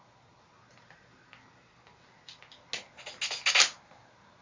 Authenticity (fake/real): real